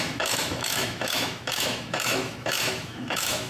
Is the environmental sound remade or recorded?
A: remade